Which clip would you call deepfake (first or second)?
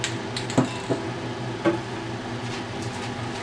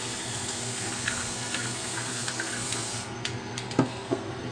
second